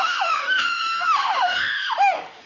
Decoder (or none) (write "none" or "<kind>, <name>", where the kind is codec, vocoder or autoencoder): autoencoder, DAC-VAE